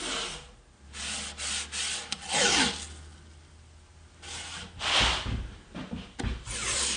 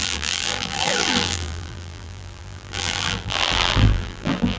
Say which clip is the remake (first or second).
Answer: second